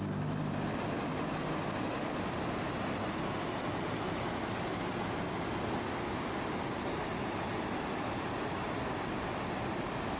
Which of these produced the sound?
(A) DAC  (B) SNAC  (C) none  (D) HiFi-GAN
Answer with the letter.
C